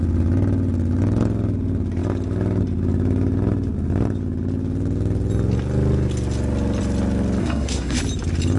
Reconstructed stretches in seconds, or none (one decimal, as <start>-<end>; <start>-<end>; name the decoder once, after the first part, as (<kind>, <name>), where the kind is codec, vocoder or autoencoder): 7.4-8.0 (codec, SNAC)